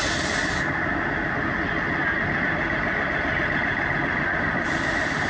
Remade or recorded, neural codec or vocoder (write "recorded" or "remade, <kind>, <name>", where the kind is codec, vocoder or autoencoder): recorded